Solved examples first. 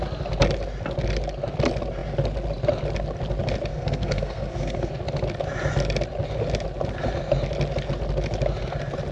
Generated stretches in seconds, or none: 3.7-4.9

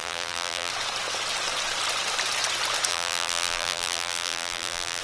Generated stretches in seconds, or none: 0.0-0.7; 2.9-5.0

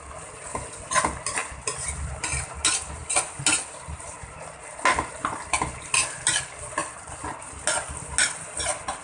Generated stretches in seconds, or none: none

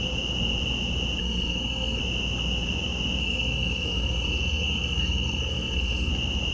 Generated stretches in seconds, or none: 1.2-2.0; 3.2-6.1

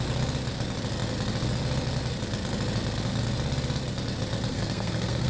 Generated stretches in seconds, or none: 4.5-5.3

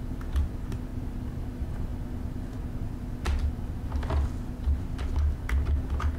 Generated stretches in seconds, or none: none